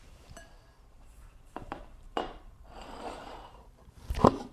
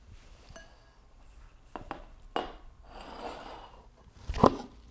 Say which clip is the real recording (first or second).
second